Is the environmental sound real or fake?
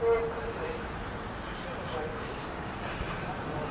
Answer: real